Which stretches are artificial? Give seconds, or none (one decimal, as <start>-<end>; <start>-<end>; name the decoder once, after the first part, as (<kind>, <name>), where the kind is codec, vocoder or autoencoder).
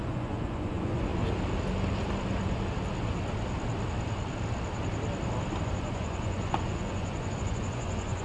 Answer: 0.0-1.1 (vocoder, Vocos); 5.6-8.2